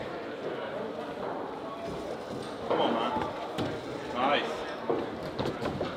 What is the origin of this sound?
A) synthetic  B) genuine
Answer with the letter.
B